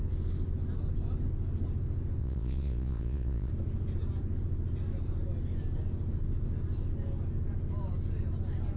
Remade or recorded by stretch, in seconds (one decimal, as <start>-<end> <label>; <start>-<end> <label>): 0.0-2.2 recorded; 2.2-3.5 remade; 3.5-8.8 recorded